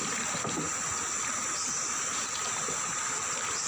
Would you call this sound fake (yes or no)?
no